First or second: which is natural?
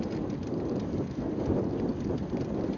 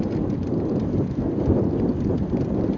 first